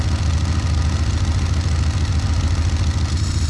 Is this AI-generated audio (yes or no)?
no